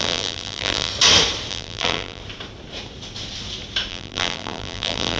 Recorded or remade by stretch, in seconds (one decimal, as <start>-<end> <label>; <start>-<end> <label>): 0.0-0.9 remade; 0.9-1.5 recorded; 1.5-2.2 remade; 2.2-3.9 recorded; 3.9-5.2 remade